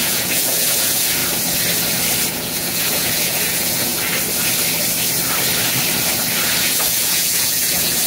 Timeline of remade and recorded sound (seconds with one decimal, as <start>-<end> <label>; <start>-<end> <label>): 0.0-1.2 remade; 1.2-2.3 recorded; 2.3-3.9 remade; 3.9-6.6 recorded; 6.6-8.1 remade